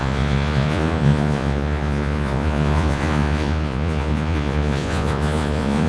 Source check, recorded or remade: remade